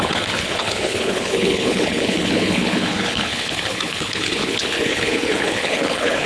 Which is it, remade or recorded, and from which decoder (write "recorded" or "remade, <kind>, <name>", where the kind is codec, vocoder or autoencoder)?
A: remade, codec, HILCodec